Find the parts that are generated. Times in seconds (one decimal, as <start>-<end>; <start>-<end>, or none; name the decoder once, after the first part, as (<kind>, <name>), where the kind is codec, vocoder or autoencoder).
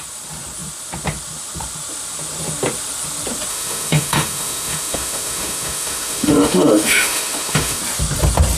3.5-7.8 (autoencoder, DAC-VAE)